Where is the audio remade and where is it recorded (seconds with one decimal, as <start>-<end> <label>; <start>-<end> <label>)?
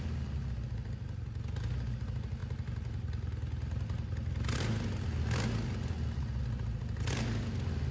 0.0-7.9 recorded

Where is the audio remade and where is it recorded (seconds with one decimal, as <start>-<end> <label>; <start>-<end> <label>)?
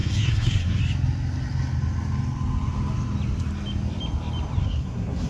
0.0-0.8 remade; 0.8-4.6 recorded; 4.6-5.3 remade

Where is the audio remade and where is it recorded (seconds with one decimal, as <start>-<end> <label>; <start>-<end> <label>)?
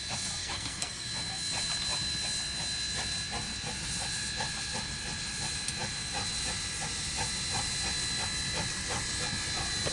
0.0-0.4 recorded; 0.4-1.1 remade; 1.1-9.9 recorded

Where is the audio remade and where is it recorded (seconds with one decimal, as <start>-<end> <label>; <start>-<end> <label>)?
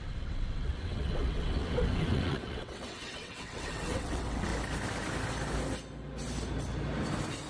0.0-4.5 remade; 4.5-7.5 recorded